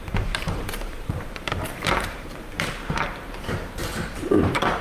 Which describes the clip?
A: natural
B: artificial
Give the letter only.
B